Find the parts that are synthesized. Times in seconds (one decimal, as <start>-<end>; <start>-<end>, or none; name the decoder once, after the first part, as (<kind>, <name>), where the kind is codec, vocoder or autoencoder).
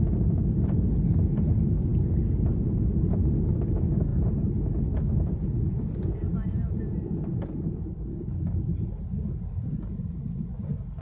none